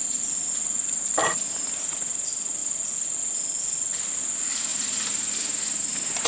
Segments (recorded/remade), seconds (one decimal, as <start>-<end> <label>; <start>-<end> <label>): 0.0-1.2 remade; 1.2-1.8 recorded; 1.8-4.7 remade; 4.7-6.3 recorded